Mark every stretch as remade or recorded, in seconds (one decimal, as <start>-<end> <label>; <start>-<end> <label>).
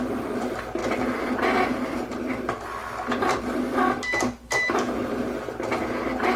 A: 0.0-6.4 recorded